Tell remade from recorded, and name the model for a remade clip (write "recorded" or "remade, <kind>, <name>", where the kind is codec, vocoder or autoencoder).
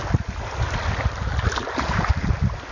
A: recorded